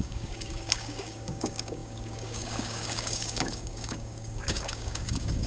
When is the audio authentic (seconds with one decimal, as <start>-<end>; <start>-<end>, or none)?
none